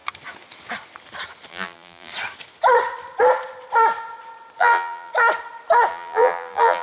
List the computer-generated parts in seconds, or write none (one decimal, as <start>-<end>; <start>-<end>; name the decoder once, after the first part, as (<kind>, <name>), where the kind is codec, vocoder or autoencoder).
1.5-2.1 (vocoder, BigVGAN v2); 4.6-5.1; 5.9-6.8